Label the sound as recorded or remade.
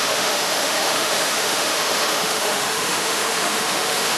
remade